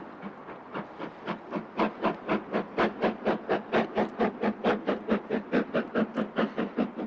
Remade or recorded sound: recorded